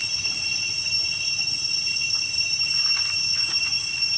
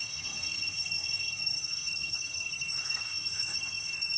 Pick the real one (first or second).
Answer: first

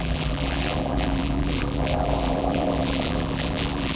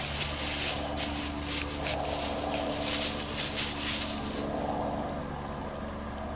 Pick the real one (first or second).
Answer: second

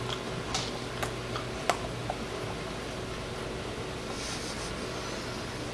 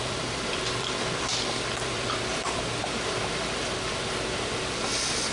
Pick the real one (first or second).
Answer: first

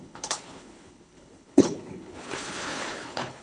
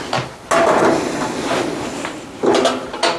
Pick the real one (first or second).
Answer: second